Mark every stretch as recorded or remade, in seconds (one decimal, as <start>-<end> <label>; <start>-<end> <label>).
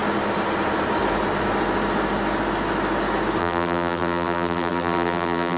0.0-3.4 recorded; 3.4-5.6 remade